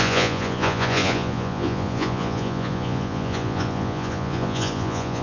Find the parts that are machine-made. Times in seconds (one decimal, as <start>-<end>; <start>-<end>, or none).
0.0-5.2